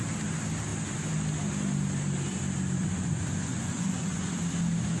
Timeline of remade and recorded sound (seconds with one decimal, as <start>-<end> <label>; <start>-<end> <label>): 0.0-2.8 recorded; 2.8-4.3 remade; 4.3-5.0 recorded